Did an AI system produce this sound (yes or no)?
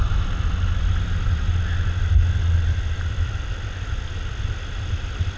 no